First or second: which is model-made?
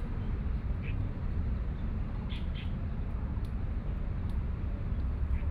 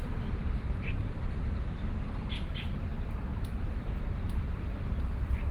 second